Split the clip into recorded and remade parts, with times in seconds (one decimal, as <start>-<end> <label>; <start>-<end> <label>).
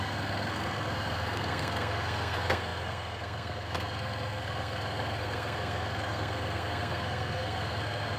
0.0-8.2 remade